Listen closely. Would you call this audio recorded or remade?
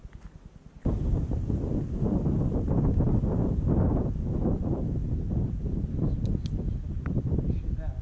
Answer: recorded